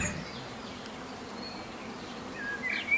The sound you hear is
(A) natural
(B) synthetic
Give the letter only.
A